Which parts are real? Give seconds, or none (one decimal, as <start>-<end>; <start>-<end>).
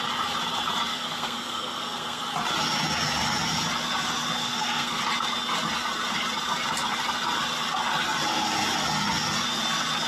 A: 0.0-0.9; 2.2-4.4; 5.0-10.1